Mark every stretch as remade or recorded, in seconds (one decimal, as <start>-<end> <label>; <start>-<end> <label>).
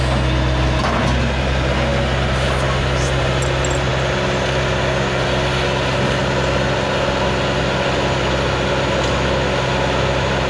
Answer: 0.0-10.5 recorded